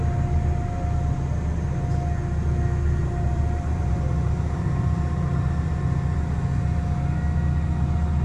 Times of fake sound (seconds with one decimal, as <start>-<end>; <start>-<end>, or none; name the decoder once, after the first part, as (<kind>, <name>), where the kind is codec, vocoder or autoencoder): 3.0-5.7 (vocoder, BigVGAN v2)